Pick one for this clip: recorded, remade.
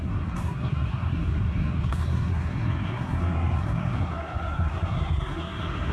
remade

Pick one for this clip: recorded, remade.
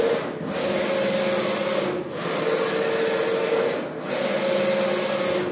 recorded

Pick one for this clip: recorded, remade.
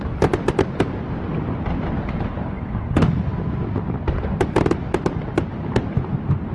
recorded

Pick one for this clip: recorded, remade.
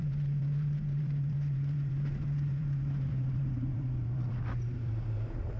remade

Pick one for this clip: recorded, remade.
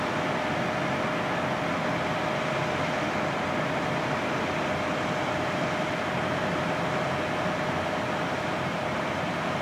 recorded